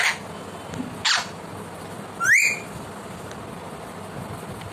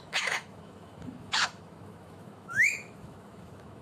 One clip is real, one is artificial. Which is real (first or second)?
first